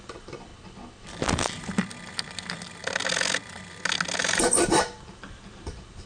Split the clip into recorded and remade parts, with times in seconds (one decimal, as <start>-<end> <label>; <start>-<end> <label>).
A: 0.0-0.5 remade; 0.5-4.2 recorded; 4.2-6.1 remade